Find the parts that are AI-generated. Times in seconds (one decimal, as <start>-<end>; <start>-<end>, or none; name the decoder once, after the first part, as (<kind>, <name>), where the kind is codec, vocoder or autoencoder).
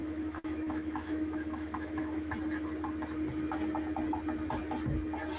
0.0-2.3 (autoencoder, DAC-VAE)